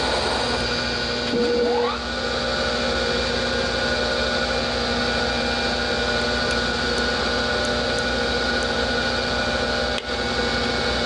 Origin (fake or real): real